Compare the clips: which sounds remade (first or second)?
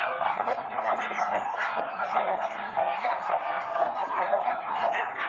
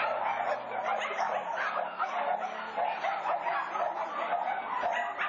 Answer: first